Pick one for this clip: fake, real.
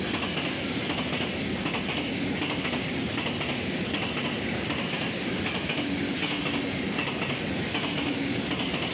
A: real